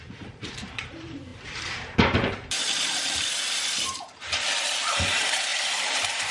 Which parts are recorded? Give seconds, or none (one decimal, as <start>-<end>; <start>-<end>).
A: none